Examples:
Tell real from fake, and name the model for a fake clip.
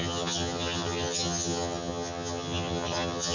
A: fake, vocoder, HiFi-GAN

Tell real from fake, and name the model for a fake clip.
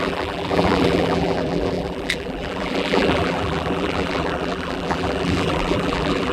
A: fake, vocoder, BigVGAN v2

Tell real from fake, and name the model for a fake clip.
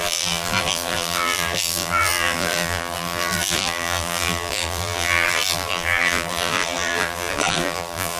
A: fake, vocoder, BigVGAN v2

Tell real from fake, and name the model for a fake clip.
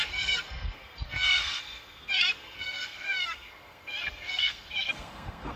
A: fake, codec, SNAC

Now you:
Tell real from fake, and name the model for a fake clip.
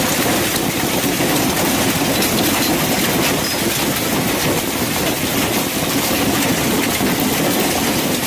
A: real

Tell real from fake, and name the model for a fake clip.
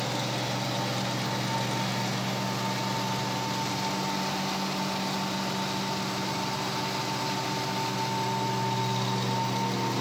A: real